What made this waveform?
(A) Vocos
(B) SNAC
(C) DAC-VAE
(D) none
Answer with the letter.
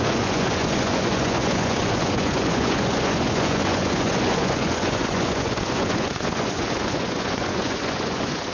A